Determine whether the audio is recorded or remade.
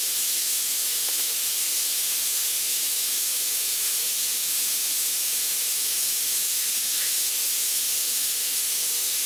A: remade